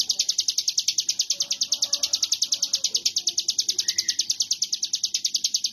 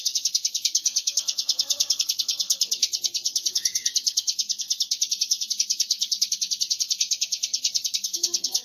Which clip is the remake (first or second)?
second